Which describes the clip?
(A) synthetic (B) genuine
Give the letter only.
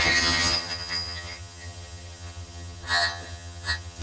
A